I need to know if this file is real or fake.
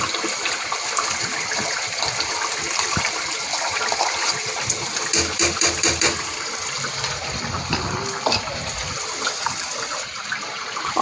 fake